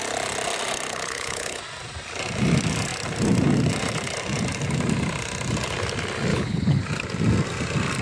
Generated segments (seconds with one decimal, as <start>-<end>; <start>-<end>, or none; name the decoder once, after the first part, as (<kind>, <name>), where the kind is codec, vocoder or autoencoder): 0.9-1.6 (codec, HILCodec); 6.3-6.8

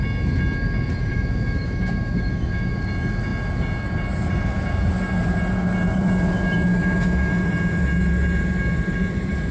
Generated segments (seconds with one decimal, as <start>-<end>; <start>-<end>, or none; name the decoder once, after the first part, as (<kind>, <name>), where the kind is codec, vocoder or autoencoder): 1.1-2.7 (autoencoder, DAC-VAE); 6.7-7.3